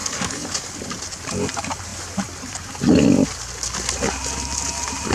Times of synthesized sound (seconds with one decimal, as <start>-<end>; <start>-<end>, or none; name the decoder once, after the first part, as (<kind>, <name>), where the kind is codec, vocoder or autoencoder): 0.0-0.7 (codec, DAC)